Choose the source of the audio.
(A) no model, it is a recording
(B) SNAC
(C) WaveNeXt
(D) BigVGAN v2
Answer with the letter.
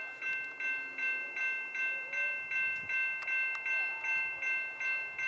A